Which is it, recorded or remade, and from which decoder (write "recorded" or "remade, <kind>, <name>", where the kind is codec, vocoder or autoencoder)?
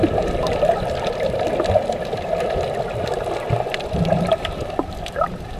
recorded